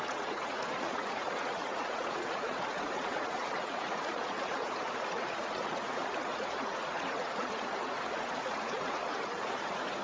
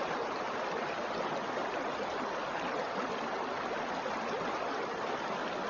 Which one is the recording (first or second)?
second